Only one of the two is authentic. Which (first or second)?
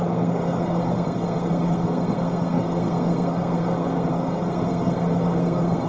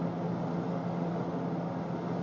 second